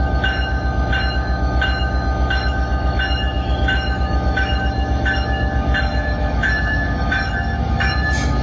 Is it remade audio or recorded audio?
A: remade